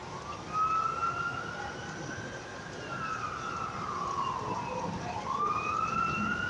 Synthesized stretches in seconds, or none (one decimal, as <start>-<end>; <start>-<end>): 2.5-6.5

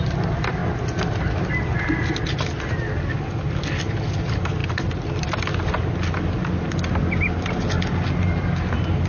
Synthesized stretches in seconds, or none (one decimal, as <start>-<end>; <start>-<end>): none

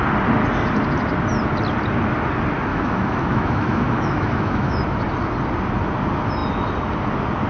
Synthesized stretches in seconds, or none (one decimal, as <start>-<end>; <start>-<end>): 2.7-4.8

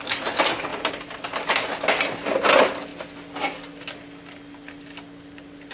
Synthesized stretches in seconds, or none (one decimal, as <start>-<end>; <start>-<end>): none

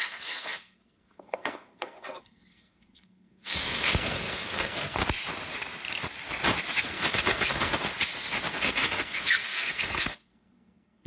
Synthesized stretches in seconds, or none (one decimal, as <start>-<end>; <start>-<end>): 0.0-5.0; 6.8-7.7; 8.5-11.1

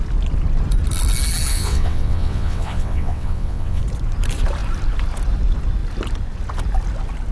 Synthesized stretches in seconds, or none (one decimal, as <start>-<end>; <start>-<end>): 1.5-3.8

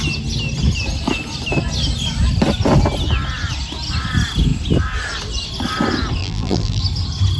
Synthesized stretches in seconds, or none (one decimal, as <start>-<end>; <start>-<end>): 6.2-6.8

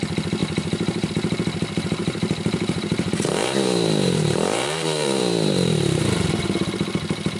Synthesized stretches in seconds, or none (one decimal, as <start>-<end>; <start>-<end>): 0.4-1.1; 2.0-6.4